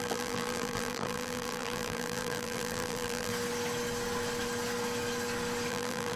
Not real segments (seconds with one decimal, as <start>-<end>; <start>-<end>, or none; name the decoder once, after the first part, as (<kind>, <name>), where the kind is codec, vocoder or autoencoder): 0.0-3.3 (vocoder, BigVGAN v2); 5.7-6.2